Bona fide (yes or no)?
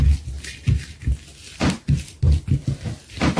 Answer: yes